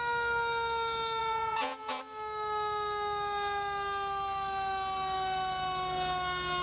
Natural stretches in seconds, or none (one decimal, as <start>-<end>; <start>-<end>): 0.0-1.2; 2.0-6.6